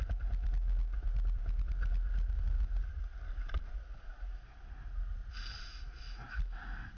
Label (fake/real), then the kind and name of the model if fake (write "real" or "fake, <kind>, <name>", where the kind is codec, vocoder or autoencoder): real